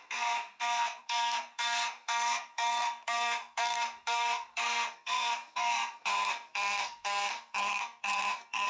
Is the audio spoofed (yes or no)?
yes